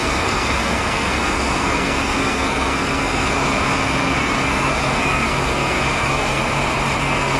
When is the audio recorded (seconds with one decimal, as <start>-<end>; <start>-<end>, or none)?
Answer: 6.4-7.0